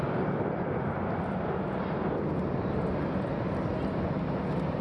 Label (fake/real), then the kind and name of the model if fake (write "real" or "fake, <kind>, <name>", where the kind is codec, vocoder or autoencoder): real